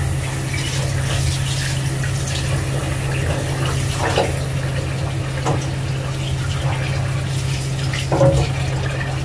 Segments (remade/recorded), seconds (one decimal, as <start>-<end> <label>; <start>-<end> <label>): 0.0-9.2 recorded